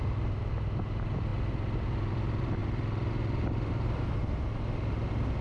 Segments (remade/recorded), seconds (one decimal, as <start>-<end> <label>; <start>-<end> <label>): 0.0-5.4 recorded